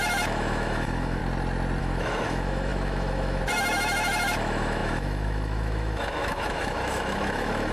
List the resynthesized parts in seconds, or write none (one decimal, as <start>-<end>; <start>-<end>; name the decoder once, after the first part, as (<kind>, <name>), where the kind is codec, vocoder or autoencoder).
0.0-1.2 (autoencoder, DAC-VAE); 1.8-7.7